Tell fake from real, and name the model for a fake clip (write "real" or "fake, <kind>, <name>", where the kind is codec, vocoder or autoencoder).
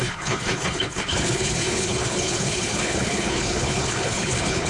fake, codec, HILCodec